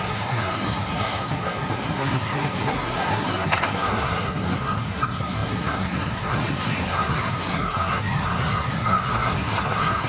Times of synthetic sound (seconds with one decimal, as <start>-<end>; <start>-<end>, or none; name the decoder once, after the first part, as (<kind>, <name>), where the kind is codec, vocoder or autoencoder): 0.0-10.1 (codec, SNAC)